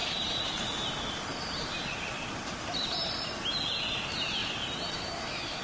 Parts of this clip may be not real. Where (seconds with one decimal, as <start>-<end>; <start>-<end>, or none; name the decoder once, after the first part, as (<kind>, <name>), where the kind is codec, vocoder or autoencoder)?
0.0-3.4 (vocoder, BigVGAN v2)

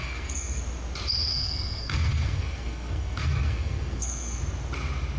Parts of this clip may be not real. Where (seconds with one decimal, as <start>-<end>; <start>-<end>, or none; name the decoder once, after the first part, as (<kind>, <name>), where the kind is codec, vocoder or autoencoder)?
0.0-0.6 (codec, SNAC); 1.3-4.4

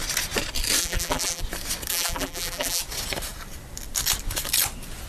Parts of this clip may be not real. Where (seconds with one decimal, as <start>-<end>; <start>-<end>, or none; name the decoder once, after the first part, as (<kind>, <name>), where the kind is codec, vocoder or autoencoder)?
0.8-1.4 (vocoder, BigVGAN v2); 1.9-2.8

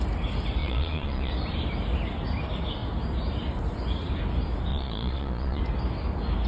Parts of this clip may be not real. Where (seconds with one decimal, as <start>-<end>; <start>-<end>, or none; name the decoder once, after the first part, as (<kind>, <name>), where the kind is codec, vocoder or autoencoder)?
0.6-1.3 (vocoder, Vocos); 4.7-5.6

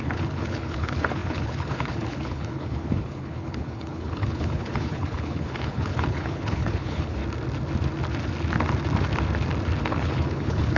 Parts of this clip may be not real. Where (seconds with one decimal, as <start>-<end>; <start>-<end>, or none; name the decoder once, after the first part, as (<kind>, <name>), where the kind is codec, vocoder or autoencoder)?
0.0-7.2 (codec, HILCodec); 9.9-10.8

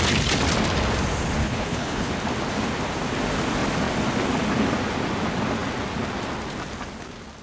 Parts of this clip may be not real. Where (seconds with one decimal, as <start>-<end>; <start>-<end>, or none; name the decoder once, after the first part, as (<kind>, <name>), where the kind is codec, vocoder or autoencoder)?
1.4-2.1 (codec, HILCodec)